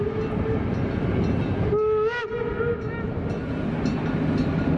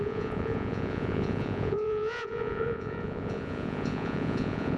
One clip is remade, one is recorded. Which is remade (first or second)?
second